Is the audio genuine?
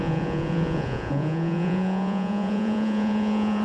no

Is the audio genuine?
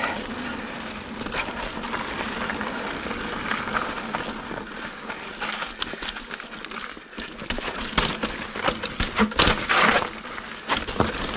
yes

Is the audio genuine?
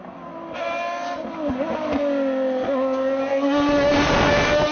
yes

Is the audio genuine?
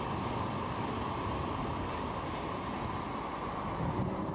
yes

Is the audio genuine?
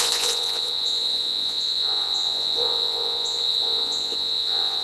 no